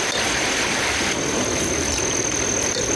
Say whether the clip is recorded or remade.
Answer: recorded